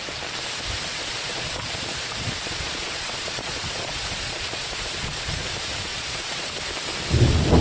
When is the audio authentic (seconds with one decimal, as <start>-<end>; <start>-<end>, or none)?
0.0-0.9; 5.5-5.9; 6.5-7.6